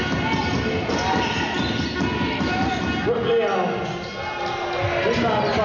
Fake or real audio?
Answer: real